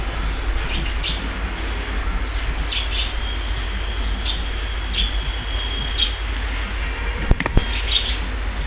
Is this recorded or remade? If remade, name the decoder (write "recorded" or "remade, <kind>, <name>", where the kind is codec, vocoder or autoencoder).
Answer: recorded